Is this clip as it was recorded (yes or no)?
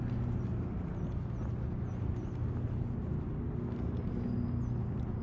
yes